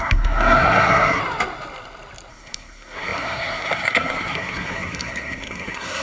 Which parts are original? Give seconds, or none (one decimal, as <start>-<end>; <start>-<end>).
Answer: 1.2-2.3